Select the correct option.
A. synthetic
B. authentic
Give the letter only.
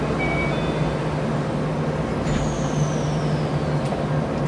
B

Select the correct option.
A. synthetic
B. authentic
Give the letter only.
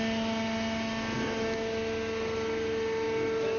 B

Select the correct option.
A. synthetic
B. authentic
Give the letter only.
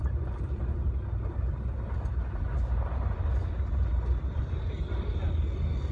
B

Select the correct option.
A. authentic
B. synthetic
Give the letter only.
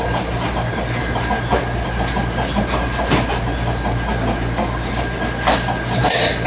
A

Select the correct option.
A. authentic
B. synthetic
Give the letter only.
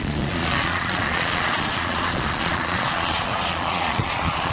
B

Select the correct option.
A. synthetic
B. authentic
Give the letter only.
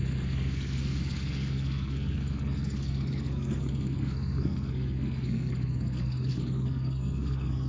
A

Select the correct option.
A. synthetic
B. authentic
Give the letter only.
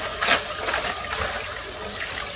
B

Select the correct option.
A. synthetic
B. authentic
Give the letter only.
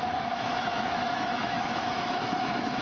A